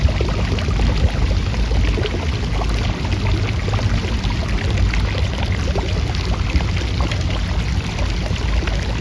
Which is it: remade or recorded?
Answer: recorded